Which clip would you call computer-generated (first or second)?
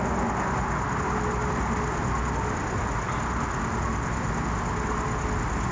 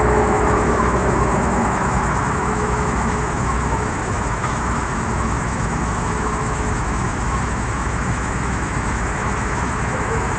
second